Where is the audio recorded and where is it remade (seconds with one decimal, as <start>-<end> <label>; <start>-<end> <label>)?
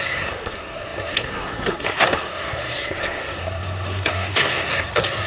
0.0-5.3 remade